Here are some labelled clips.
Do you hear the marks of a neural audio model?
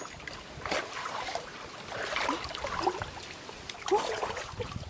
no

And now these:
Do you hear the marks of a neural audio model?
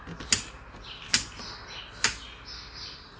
no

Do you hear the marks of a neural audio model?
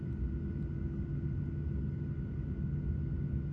no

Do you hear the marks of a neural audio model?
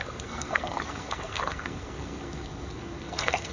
yes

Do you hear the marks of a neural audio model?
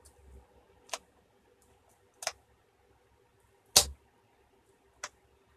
no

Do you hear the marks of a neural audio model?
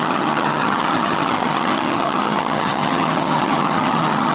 yes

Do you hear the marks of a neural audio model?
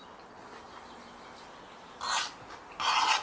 no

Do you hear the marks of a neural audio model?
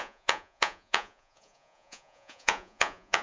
yes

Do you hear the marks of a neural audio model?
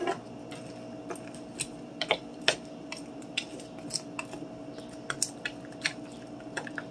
no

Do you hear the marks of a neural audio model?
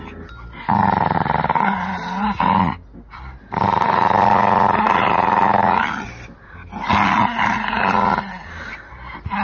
no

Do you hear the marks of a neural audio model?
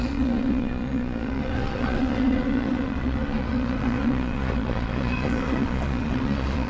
yes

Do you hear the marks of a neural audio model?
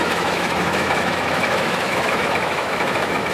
yes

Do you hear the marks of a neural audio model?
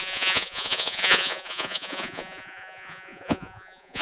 yes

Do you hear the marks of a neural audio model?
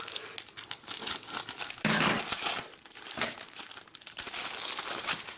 no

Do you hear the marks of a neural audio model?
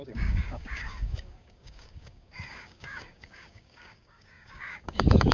yes